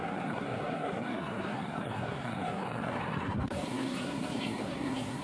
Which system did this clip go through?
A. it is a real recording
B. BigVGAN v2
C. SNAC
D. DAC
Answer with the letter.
C